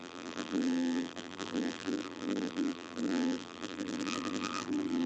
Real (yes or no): no